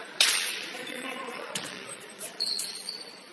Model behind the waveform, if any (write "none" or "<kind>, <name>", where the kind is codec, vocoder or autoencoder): vocoder, Vocos